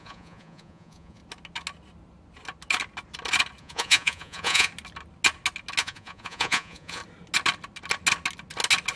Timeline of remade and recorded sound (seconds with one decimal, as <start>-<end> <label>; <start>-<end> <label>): 0.0-1.2 remade; 1.2-3.6 recorded; 3.6-4.7 remade; 4.7-5.8 recorded; 5.8-7.0 remade; 7.0-9.0 recorded